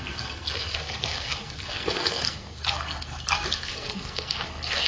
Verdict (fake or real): fake